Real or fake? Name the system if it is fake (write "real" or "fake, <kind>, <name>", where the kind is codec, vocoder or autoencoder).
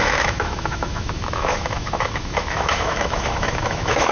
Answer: fake, autoencoder, DAC-VAE